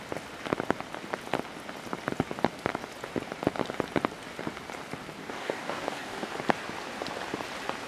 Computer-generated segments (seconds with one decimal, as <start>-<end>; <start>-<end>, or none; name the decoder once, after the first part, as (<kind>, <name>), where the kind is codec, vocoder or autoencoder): 5.2-6.3 (codec, DAC)